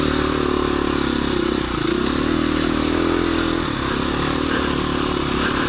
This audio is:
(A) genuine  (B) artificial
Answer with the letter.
A